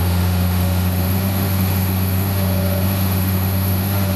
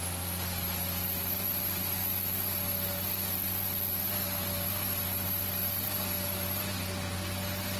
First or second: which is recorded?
second